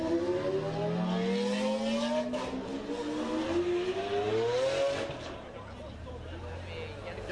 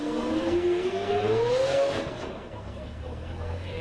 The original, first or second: first